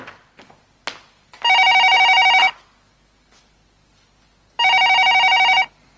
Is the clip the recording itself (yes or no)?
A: yes